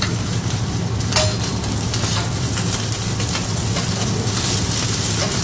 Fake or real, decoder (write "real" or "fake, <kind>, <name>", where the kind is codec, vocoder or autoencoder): real